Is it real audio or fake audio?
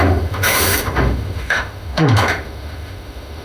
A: fake